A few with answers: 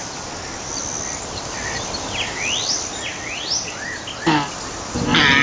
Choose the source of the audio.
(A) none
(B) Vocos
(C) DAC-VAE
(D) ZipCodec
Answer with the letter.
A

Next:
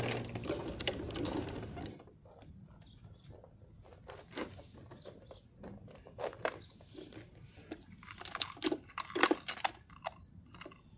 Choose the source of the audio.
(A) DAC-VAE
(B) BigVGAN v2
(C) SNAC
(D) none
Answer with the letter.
D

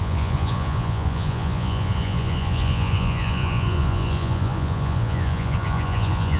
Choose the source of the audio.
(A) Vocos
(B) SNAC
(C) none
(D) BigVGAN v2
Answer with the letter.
A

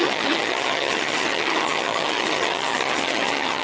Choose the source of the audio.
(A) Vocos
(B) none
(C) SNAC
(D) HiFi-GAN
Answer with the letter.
D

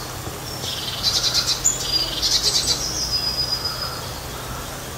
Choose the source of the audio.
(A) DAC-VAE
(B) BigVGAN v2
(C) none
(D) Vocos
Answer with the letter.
C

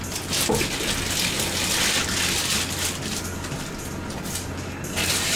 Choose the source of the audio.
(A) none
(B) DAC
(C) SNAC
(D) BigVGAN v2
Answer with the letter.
A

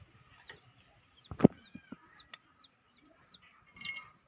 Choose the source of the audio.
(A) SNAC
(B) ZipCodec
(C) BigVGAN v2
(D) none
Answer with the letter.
D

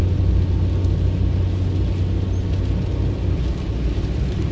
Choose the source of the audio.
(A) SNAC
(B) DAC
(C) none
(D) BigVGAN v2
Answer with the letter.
C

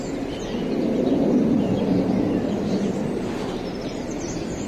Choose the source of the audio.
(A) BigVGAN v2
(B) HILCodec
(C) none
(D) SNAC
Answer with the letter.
A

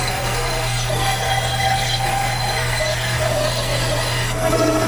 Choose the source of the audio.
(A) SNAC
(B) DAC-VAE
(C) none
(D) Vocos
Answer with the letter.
A